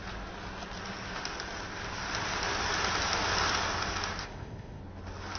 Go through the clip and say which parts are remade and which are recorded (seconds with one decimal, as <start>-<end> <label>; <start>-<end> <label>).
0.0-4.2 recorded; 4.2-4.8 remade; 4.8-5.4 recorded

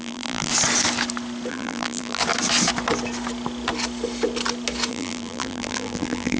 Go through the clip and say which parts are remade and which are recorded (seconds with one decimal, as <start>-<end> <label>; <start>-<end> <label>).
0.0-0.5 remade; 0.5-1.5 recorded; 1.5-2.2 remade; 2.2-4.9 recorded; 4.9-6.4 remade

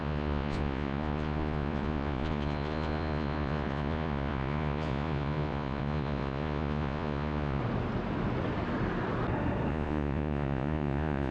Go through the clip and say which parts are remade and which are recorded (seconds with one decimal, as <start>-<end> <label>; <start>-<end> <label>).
0.0-7.6 remade; 7.6-9.7 recorded; 9.7-11.3 remade

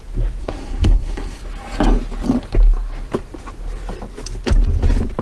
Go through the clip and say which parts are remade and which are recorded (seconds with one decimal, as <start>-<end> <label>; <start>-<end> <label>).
0.0-0.4 recorded; 0.4-1.4 remade; 1.4-5.2 recorded

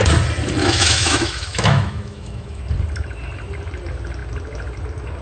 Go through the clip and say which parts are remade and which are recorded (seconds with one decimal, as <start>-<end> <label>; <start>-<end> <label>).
0.0-0.6 recorded; 0.6-2.6 remade; 2.6-5.2 recorded

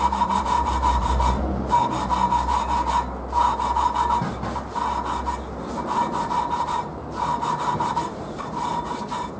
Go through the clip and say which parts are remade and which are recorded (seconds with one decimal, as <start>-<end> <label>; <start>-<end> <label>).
0.0-2.1 remade; 2.1-6.4 recorded; 6.4-9.4 remade